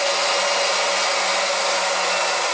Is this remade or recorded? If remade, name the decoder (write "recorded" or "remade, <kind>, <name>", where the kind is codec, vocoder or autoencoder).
recorded